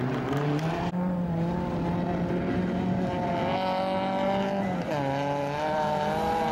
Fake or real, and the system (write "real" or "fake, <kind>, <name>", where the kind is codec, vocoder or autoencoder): real